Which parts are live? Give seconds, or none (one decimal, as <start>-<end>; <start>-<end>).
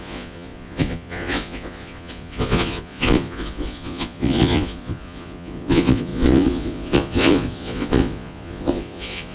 none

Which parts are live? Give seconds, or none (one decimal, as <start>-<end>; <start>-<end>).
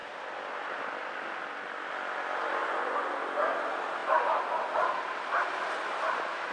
0.0-2.6; 3.2-6.5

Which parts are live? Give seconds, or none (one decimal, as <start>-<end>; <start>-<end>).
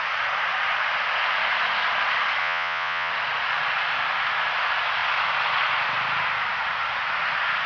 0.0-2.4; 3.1-7.7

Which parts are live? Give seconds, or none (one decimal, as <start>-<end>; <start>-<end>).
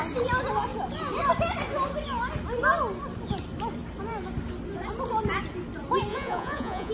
0.0-6.1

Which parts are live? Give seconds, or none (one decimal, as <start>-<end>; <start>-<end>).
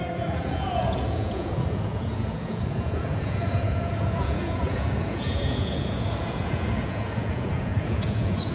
none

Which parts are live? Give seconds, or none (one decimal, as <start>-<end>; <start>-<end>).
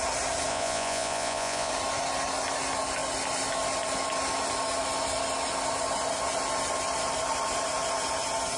0.0-0.5; 1.7-8.6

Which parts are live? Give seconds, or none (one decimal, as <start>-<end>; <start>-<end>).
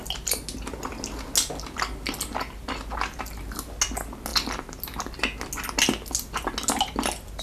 0.0-7.4